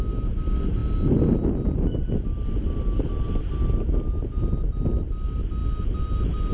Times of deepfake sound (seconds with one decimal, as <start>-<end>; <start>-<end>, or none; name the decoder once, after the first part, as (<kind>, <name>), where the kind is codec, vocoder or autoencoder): none